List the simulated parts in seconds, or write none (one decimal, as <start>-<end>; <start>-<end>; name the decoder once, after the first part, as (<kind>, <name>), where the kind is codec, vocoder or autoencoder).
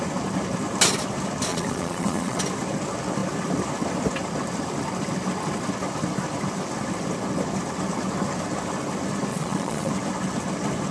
1.5-2.4 (vocoder, Vocos); 9.3-9.9